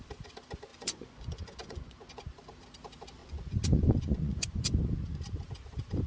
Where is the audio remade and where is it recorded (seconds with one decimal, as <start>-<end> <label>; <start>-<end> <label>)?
0.0-0.7 recorded; 0.7-2.2 remade; 2.2-3.2 recorded; 3.2-4.7 remade; 4.7-6.1 recorded